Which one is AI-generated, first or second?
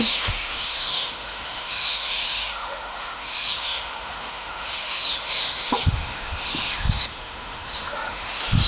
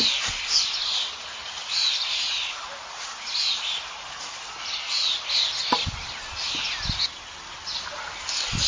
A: first